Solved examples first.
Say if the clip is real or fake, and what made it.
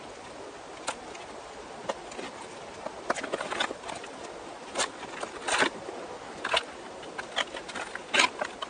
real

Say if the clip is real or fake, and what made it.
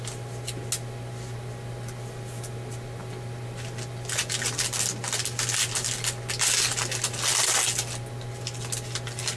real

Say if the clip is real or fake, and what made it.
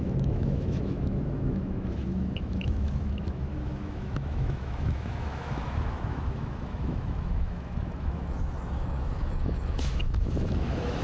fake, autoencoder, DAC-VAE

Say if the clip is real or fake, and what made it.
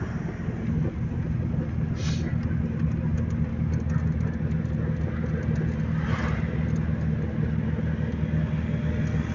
real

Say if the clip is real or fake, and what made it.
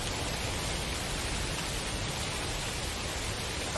real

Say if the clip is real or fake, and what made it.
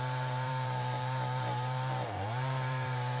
fake, vocoder, BigVGAN v2